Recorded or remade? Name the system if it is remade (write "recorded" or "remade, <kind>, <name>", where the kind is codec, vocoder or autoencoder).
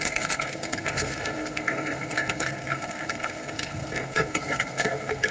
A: remade, codec, SNAC